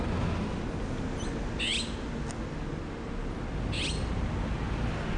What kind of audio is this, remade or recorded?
recorded